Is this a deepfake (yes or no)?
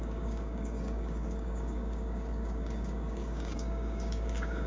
yes